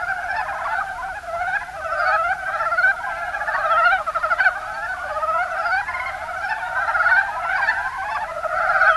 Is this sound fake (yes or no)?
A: no